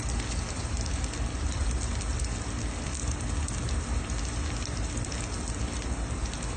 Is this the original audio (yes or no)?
yes